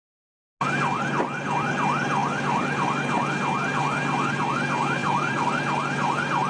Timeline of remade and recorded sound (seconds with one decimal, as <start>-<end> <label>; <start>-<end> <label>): 0.0-5.0 recorded; 5.0-5.5 remade; 5.5-6.5 recorded